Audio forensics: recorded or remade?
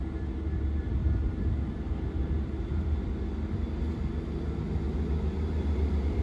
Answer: recorded